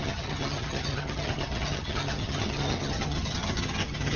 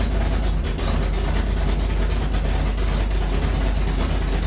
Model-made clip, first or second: first